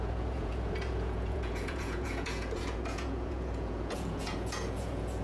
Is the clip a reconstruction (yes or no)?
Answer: yes